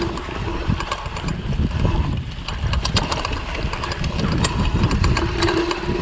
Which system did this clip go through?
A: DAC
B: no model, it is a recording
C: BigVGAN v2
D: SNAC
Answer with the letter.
B